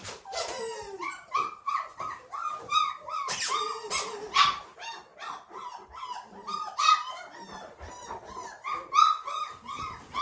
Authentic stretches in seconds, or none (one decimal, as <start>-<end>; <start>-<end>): 1.7-10.2